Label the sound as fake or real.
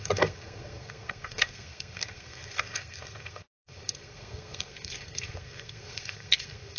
fake